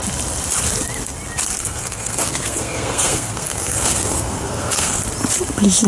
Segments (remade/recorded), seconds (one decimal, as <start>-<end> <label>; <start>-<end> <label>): 0.0-1.6 recorded; 1.6-5.0 remade; 5.0-5.9 recorded